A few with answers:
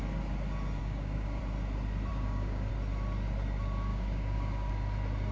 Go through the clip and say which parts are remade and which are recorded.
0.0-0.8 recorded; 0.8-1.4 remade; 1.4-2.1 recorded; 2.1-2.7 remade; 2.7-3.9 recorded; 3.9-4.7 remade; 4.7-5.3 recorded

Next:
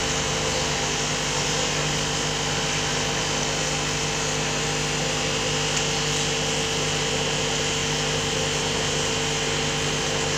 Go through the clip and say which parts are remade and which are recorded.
0.0-10.4 recorded

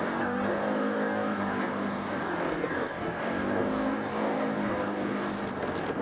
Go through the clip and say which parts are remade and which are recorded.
0.0-5.3 remade; 5.3-6.0 recorded